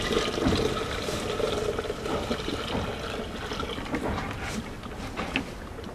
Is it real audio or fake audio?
real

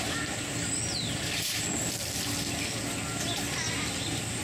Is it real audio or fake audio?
real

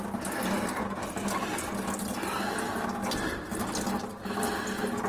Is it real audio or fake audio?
real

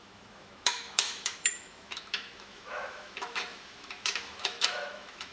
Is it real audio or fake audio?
fake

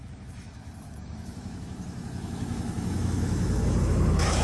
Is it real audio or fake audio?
fake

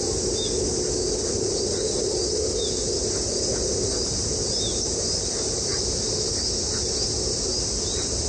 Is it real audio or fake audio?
real